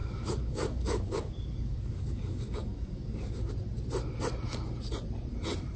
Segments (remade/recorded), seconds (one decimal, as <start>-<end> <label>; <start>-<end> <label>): 0.0-3.5 remade; 3.5-5.8 recorded